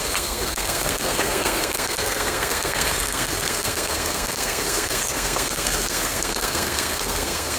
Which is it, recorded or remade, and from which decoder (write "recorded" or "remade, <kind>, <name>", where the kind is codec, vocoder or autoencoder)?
remade, codec, SNAC